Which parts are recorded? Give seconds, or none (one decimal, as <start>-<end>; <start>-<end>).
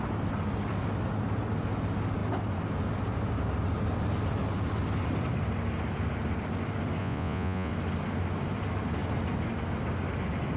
0.0-7.0; 7.7-10.6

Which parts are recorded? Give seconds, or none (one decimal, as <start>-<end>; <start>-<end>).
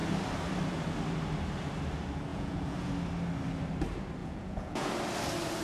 0.0-2.3; 2.9-4.2; 4.9-5.6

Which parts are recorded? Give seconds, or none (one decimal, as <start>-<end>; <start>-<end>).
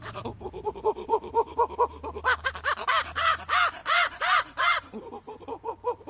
0.0-3.8; 5.0-6.1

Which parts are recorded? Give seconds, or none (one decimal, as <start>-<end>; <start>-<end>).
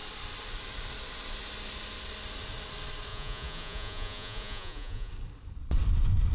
0.0-3.1; 5.1-6.3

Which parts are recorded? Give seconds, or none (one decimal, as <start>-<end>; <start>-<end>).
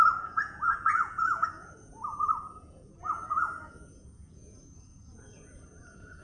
none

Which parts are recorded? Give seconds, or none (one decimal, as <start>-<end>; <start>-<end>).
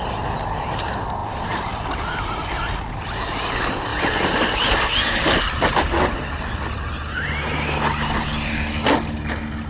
0.0-9.7